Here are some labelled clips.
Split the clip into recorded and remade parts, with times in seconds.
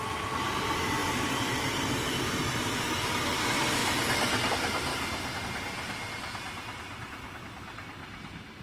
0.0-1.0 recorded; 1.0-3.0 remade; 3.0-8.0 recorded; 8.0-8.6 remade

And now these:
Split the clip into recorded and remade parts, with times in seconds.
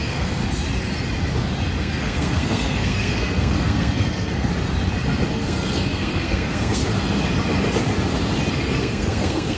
0.0-0.4 remade; 0.4-1.8 recorded; 1.8-4.5 remade; 4.5-5.3 recorded; 5.3-6.8 remade; 6.8-8.5 recorded; 8.5-9.6 remade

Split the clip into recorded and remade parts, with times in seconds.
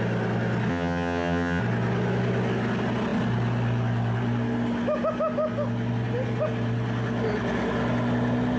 0.0-0.7 recorded; 0.7-1.6 remade; 1.6-8.6 recorded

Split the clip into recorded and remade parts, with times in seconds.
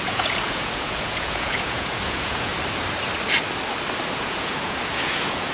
0.0-2.5 remade; 2.5-4.2 recorded; 4.2-5.5 remade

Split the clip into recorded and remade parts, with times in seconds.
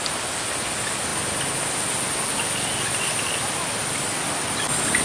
0.0-5.0 recorded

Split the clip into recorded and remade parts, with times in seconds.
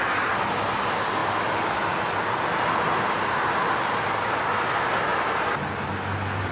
0.0-6.5 recorded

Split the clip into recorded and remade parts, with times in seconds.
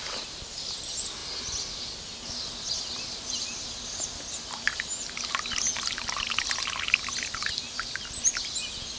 0.0-9.0 recorded